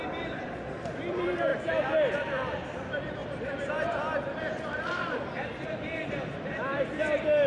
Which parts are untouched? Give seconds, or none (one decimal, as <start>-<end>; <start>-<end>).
3.2-4.4